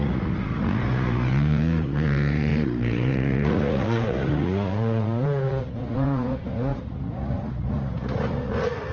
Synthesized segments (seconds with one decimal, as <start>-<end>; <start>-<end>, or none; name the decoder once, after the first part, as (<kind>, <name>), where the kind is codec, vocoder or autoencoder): 0.0-8.9 (vocoder, Vocos)